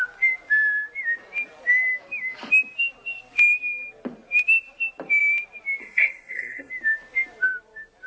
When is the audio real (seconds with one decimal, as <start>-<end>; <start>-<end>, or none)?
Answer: 0.0-5.8; 6.7-8.1